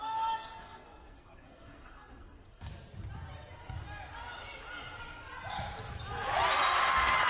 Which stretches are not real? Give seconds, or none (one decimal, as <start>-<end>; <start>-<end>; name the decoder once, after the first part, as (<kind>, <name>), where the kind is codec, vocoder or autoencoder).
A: 0.0-2.7 (codec, SNAC)